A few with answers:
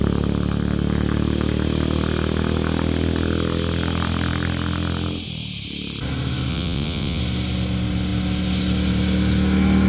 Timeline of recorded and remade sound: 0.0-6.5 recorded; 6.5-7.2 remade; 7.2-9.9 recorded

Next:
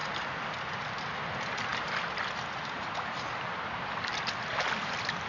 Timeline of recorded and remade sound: 0.0-5.3 recorded